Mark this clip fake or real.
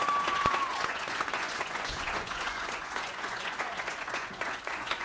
fake